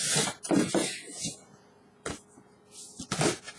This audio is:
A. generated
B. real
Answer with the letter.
B